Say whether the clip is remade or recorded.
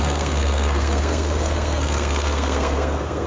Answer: remade